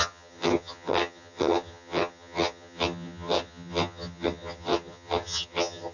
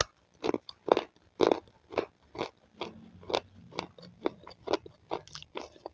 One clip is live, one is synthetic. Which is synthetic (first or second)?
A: first